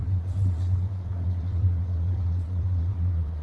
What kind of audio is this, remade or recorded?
remade